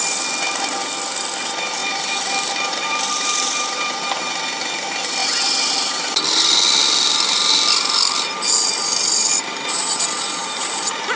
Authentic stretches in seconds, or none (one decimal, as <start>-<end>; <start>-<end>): 0.0-1.8; 4.2-10.4